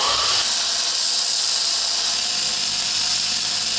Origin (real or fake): real